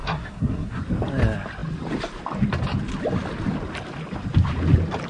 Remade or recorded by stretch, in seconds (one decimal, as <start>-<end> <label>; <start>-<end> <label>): 0.0-0.8 remade; 0.8-5.1 recorded